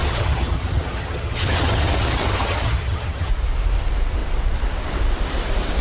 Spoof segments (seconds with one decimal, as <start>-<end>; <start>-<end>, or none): 0.0-3.3